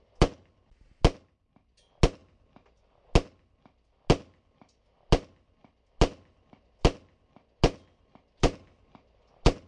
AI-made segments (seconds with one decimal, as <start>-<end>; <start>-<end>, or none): none